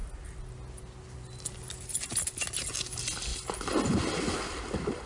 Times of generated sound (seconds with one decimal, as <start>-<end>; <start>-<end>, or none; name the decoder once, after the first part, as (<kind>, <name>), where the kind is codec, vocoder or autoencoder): none